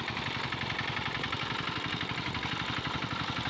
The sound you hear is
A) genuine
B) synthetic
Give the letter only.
A